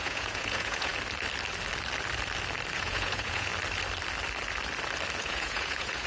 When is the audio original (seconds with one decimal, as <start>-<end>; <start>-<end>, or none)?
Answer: 0.9-2.7; 3.5-5.2